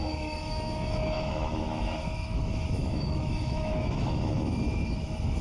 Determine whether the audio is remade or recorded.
remade